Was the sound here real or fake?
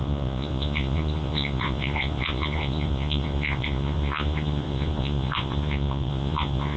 fake